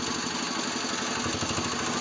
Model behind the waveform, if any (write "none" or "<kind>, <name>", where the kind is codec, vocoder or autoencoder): none